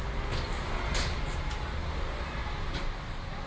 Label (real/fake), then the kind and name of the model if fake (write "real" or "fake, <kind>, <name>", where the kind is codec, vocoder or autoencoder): real